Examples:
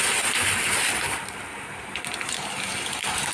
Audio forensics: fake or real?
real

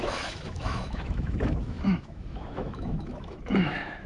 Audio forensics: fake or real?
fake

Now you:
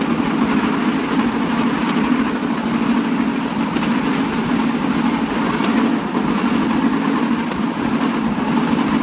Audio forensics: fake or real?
real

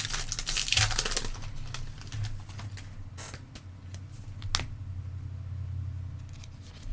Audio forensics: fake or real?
real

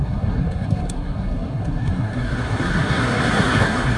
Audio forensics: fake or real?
fake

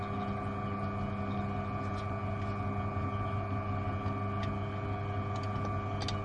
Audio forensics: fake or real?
real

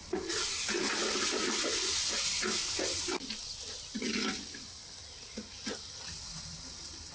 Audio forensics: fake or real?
real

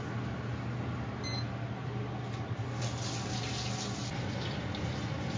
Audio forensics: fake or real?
real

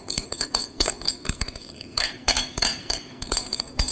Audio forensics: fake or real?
fake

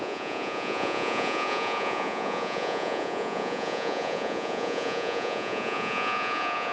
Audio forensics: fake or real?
fake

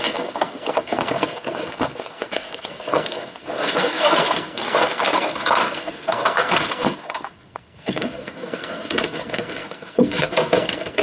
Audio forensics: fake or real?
fake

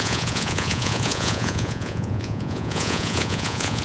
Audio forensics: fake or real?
fake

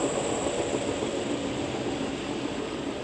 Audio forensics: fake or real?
real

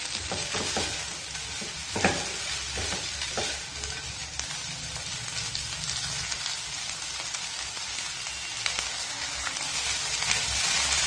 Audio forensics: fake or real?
real